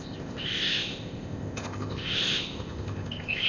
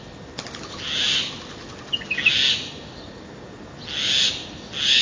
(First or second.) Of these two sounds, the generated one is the first